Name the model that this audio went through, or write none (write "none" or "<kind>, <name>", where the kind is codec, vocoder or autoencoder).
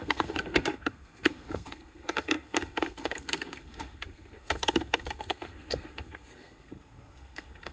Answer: codec, SNAC